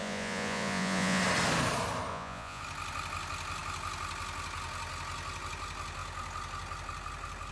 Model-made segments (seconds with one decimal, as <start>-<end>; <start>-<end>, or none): 0.0-1.2; 2.1-2.6

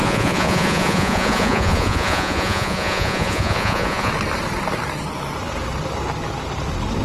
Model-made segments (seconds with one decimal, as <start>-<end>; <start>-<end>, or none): 0.0-4.1